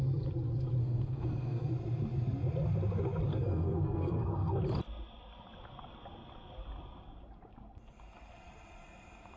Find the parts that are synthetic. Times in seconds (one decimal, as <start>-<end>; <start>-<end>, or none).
0.8-1.7; 3.3-4.6